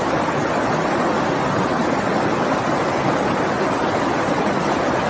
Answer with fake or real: real